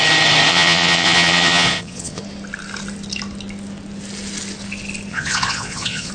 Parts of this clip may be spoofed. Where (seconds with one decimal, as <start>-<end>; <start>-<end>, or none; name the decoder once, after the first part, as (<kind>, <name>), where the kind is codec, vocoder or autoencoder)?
0.5-2.2 (vocoder, Vocos); 5.1-6.1